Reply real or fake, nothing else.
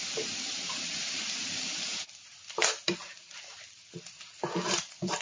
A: real